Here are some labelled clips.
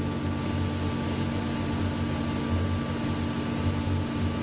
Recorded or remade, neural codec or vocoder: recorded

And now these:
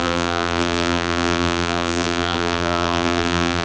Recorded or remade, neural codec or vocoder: remade, vocoder, BigVGAN v2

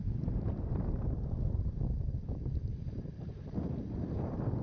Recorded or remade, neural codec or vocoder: remade, vocoder, BigVGAN v2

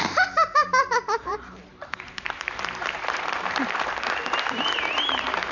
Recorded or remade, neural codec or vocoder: remade, vocoder, BigVGAN v2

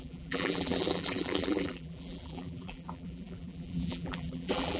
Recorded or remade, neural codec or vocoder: remade, vocoder, BigVGAN v2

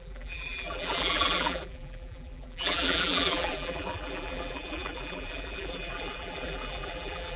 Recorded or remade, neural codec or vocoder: remade, vocoder, BigVGAN v2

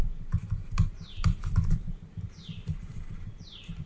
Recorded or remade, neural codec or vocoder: remade, vocoder, BigVGAN v2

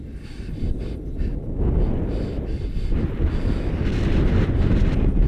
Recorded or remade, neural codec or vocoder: recorded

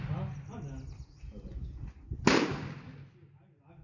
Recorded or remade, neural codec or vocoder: recorded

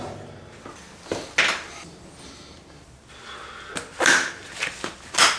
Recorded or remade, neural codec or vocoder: recorded